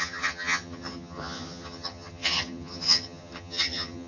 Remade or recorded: remade